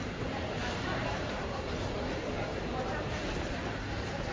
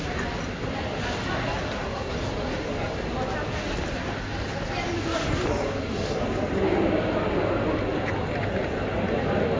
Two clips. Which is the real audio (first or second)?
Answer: second